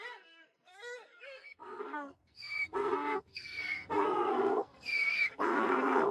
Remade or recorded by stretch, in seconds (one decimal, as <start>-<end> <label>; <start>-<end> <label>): 0.0-6.1 remade